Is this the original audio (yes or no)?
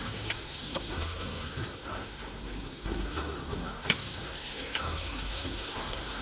no